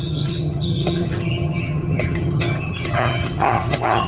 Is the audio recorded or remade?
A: remade